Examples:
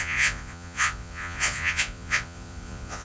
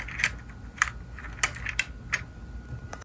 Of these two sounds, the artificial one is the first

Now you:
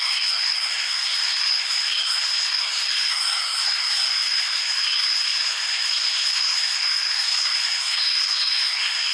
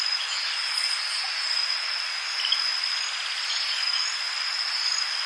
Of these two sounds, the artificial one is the first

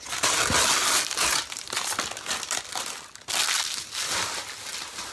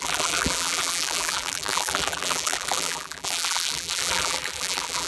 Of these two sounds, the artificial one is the second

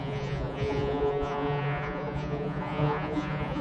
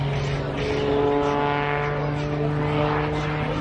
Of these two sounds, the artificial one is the first